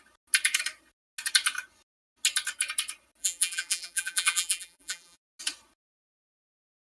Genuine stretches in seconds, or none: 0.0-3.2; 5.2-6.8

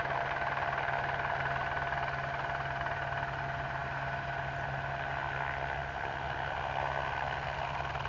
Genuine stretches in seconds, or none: 0.0-8.1

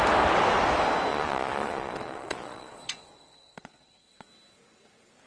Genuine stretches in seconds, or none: 0.0-1.1; 4.3-5.3

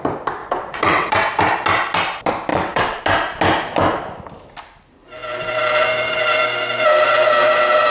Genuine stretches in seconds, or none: 0.0-0.4; 1.4-2.5; 3.0-7.9

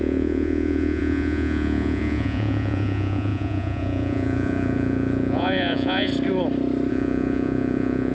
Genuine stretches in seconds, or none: 6.1-6.9

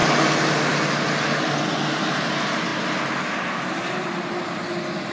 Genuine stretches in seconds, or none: 0.0-5.1

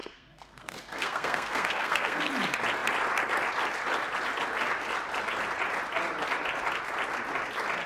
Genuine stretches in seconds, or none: 2.3-7.9